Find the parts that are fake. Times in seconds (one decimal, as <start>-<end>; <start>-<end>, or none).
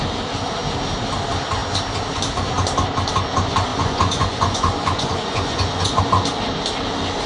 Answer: 3.7-6.0